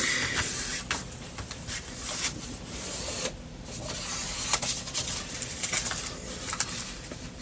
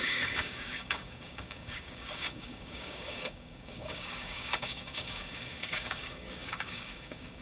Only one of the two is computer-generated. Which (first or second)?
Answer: second